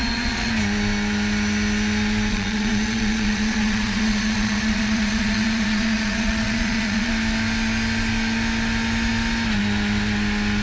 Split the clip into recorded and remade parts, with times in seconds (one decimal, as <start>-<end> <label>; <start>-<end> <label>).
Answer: 0.0-0.5 remade; 0.5-2.3 recorded; 2.3-7.1 remade; 7.1-10.6 recorded